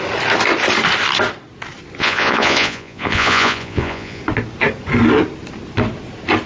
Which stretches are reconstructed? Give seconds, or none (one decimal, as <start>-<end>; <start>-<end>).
2.0-4.2